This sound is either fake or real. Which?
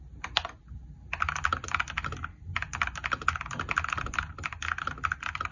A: real